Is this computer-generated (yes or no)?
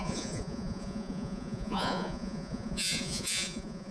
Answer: yes